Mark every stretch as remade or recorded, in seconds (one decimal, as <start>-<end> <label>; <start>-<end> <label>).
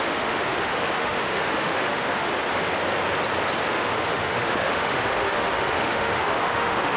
0.0-2.3 remade; 2.3-3.7 recorded; 3.7-7.0 remade